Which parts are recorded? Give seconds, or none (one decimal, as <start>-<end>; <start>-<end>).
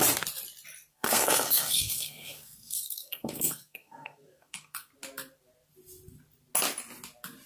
0.0-0.9; 4.9-7.5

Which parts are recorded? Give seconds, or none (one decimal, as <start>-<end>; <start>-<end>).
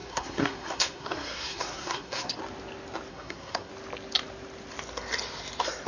2.4-3.1; 3.7-5.9